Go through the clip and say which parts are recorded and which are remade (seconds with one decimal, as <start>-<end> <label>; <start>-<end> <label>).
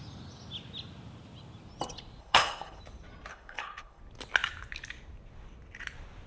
0.0-2.2 recorded; 2.2-2.8 remade; 2.8-3.3 recorded; 3.3-4.0 remade; 4.0-6.3 recorded